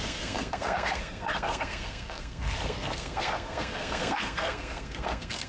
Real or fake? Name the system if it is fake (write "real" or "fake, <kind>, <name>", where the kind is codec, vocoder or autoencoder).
fake, codec, SNAC